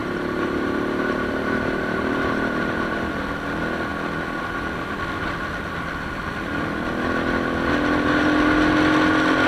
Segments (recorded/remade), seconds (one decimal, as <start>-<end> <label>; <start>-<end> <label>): 0.0-3.1 remade; 3.1-9.5 recorded

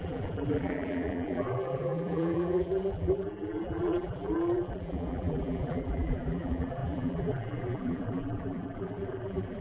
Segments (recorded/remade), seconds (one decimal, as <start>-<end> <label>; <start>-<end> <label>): 0.0-9.6 remade

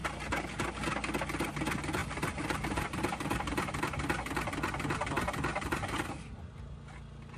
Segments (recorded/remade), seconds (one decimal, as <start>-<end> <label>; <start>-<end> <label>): 0.0-2.0 recorded; 2.0-3.8 remade; 3.8-5.5 recorded; 5.5-6.2 remade; 6.2-7.4 recorded

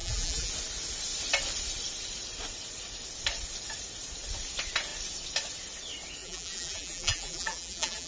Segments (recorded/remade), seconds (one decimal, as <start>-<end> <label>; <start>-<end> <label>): 0.0-0.5 remade; 0.5-6.2 recorded; 6.2-8.1 remade

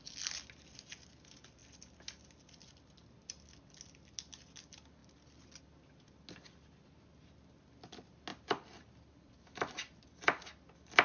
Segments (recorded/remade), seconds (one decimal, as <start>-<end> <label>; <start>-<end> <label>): 0.0-8.3 recorded; 8.3-9.3 remade; 9.3-11.0 recorded

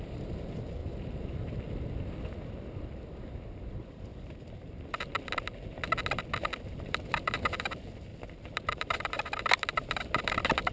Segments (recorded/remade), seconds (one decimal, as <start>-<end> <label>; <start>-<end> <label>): 0.0-0.8 recorded; 0.8-2.1 remade; 2.1-8.1 recorded; 8.1-9.4 remade; 9.4-10.7 recorded

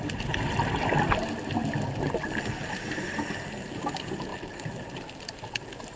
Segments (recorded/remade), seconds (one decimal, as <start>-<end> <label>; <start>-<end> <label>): 0.0-6.0 recorded

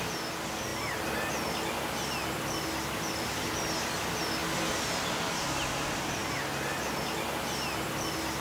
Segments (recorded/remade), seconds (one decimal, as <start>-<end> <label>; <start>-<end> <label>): 0.0-8.4 recorded